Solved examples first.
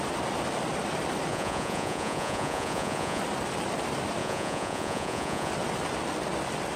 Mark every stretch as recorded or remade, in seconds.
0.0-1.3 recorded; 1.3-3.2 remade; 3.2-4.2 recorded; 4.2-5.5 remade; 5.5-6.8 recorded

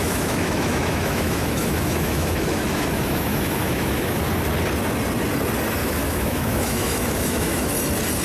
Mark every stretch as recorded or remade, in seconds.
0.0-4.2 remade; 4.2-5.8 recorded; 5.8-7.7 remade; 7.7-8.2 recorded

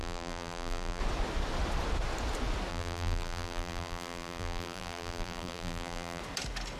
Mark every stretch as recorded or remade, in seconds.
0.0-1.0 remade; 1.0-2.7 recorded; 2.7-6.2 remade; 6.2-6.8 recorded

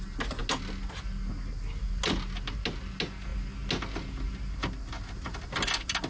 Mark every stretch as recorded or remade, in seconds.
0.0-6.1 recorded

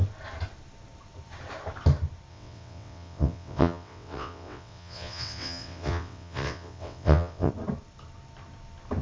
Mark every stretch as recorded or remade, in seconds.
0.0-2.3 recorded; 2.3-7.5 remade; 7.5-9.0 recorded